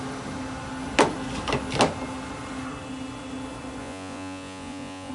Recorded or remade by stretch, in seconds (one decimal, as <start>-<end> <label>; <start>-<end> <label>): 0.0-3.8 recorded; 3.8-5.1 remade